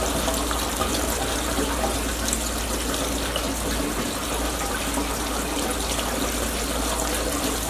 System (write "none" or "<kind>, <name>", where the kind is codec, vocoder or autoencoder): none